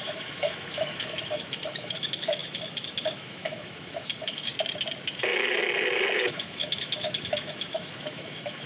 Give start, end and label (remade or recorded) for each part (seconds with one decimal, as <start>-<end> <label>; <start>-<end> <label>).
0.0-4.5 remade; 4.5-5.2 recorded; 5.2-8.7 remade